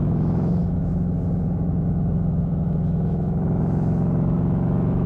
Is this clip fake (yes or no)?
yes